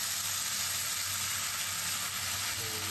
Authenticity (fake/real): real